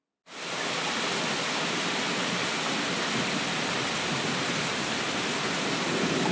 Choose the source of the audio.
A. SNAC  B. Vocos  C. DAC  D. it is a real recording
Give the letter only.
D